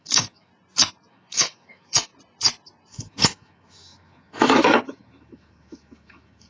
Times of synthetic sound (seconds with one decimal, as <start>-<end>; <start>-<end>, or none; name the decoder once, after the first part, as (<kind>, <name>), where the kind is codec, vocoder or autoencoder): 0.0-0.5 (autoencoder, DAC-VAE); 1.1-2.1; 2.9-6.5